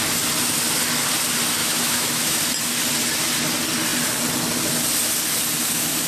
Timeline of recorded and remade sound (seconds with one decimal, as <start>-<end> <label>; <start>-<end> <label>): 0.0-1.6 recorded; 1.6-2.4 remade; 2.4-6.1 recorded